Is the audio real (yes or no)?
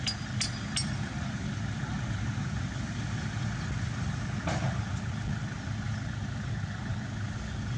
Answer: yes